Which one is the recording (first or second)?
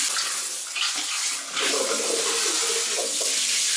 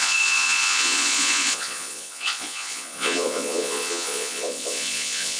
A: first